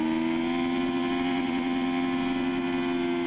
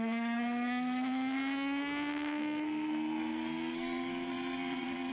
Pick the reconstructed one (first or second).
second